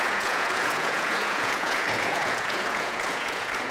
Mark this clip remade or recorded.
remade